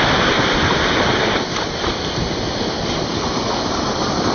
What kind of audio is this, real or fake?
real